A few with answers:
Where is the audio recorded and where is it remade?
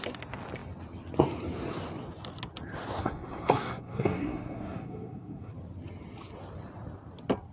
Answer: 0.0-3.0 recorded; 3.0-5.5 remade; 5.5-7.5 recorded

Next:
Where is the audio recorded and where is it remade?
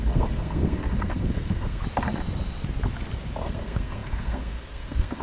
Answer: 0.0-1.8 remade; 1.8-3.4 recorded; 3.4-5.2 remade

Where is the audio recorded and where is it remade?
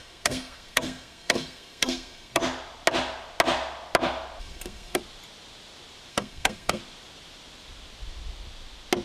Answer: 0.0-2.4 remade; 2.4-4.4 recorded; 4.4-5.0 remade; 5.0-6.1 recorded; 6.1-6.8 remade; 6.8-9.0 recorded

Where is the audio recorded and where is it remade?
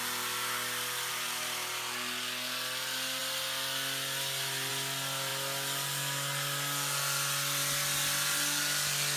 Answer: 0.0-9.2 recorded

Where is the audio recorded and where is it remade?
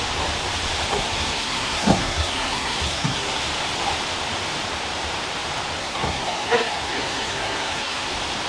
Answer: 0.0-0.9 recorded; 0.9-3.4 remade; 3.4-5.8 recorded; 5.8-8.1 remade; 8.1-8.5 recorded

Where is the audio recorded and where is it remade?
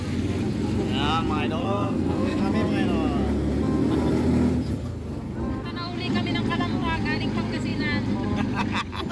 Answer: 0.0-1.6 recorded; 1.6-2.4 remade; 2.4-9.1 recorded